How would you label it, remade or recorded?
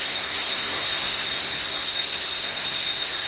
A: remade